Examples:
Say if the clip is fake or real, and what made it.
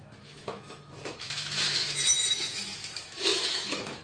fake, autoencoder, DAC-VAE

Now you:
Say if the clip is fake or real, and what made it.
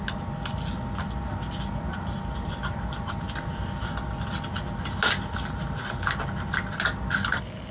real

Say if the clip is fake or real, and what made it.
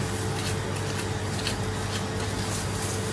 real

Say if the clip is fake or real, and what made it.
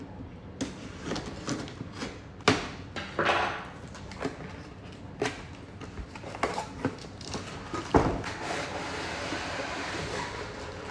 real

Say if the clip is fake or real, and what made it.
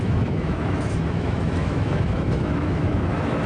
fake, autoencoder, DAC-VAE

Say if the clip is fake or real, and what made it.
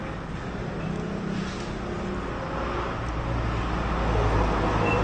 real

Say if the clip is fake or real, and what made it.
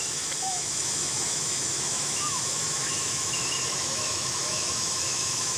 fake, autoencoder, DAC-VAE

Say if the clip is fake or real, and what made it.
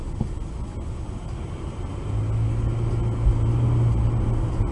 real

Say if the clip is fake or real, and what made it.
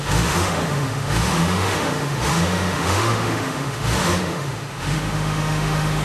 fake, autoencoder, DAC-VAE